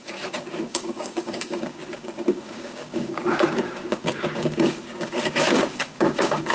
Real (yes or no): no